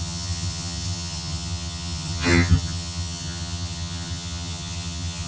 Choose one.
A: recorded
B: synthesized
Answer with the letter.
B